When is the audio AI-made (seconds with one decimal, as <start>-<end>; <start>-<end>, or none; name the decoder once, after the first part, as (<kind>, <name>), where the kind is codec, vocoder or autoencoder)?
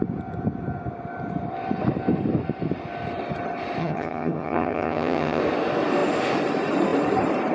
3.8-5.4 (vocoder, HiFi-GAN)